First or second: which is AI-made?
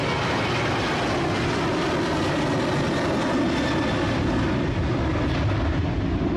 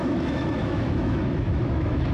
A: second